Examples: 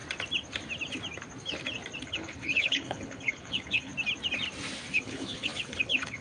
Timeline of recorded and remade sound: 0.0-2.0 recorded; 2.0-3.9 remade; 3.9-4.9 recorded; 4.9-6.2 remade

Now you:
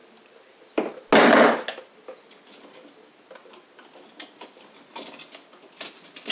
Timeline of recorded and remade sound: 0.0-6.3 recorded

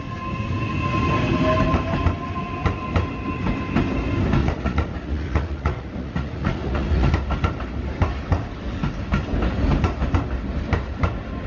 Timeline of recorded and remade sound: 0.0-4.4 recorded; 4.4-7.1 remade; 7.1-11.5 recorded